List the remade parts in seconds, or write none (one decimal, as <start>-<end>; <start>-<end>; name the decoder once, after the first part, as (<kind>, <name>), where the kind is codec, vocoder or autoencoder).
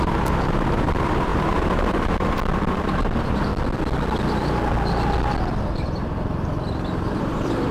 0.0-3.5 (vocoder, BigVGAN v2); 7.2-7.7